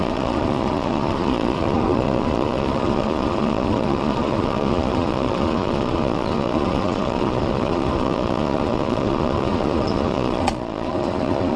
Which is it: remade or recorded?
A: remade